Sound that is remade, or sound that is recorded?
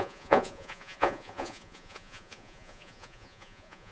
remade